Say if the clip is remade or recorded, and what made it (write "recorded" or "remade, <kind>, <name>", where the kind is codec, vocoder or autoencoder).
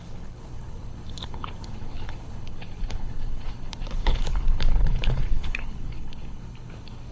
remade, codec, HILCodec